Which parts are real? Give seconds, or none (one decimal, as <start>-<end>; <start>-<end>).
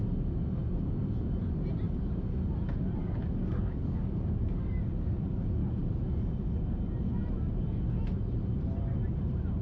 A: 0.0-3.0; 4.8-9.6